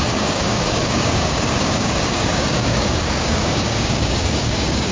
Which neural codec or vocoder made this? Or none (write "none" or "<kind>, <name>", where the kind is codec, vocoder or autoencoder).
codec, DAC